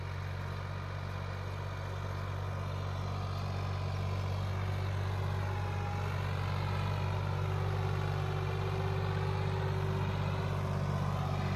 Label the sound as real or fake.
real